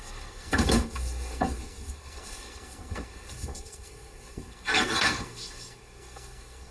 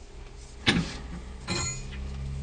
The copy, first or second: first